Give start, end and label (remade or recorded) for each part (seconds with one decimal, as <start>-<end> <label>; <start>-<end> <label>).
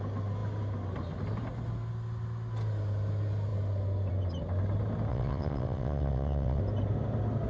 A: 0.0-5.1 recorded; 5.1-6.6 remade; 6.6-7.5 recorded